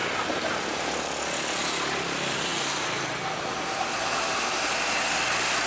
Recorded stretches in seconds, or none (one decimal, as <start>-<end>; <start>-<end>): 0.0-5.7